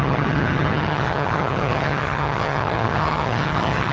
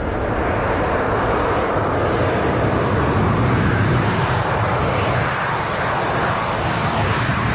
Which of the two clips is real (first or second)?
second